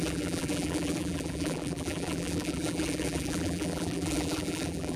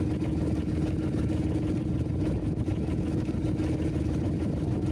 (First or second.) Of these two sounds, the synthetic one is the first